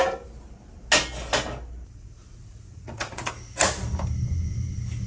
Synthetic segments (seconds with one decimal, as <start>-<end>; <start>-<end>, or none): 2.4-3.3

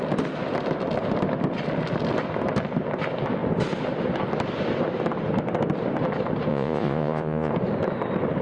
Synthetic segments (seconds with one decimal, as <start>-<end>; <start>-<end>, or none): 6.5-7.5

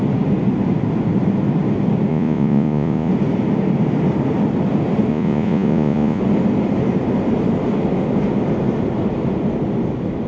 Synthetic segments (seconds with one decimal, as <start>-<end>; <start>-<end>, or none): 2.1-3.1; 5.1-6.2

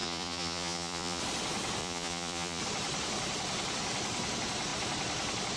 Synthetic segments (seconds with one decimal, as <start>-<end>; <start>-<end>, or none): 0.0-1.2; 1.8-2.6

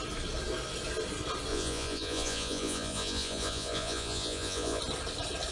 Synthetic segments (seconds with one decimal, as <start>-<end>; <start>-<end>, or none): 1.5-4.8

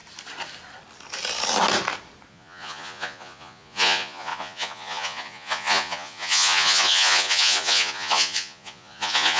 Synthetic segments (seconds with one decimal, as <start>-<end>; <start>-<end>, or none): 2.3-9.4

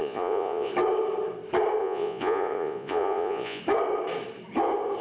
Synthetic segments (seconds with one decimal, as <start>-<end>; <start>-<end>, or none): 0.0-0.7; 1.8-3.6